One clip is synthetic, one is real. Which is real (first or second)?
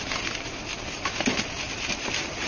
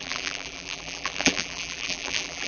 first